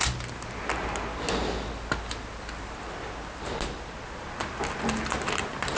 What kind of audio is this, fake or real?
real